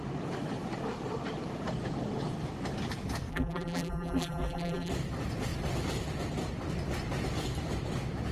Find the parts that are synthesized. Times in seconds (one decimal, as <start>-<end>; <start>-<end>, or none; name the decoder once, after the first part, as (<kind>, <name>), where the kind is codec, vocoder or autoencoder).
3.3-4.9 (vocoder, BigVGAN v2)